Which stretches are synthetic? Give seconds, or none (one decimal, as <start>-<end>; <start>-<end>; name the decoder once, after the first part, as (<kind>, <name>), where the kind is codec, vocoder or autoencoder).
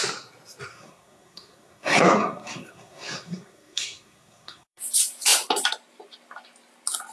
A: 0.7-4.8 (codec, SNAC)